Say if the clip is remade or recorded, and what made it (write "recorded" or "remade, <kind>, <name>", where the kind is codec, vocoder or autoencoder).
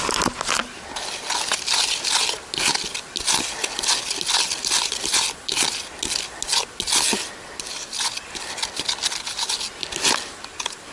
recorded